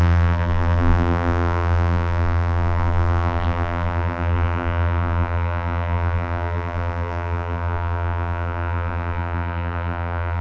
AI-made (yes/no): yes